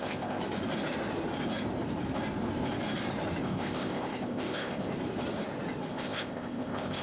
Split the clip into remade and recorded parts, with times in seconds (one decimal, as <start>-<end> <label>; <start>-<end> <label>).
0.0-0.4 remade; 0.4-3.4 recorded; 3.4-4.9 remade; 4.9-5.9 recorded; 5.9-7.0 remade